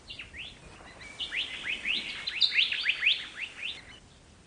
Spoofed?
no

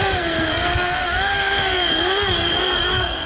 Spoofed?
yes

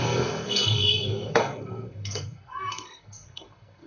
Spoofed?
yes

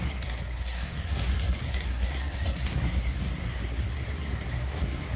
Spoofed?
yes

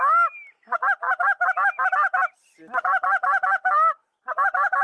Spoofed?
no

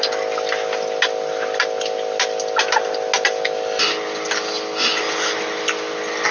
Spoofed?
no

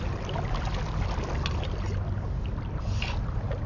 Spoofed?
no